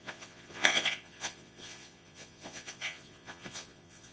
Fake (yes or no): yes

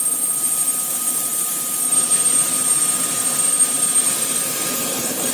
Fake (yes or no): yes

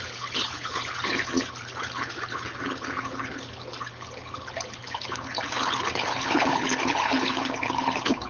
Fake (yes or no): yes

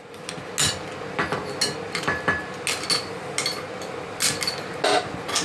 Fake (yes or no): no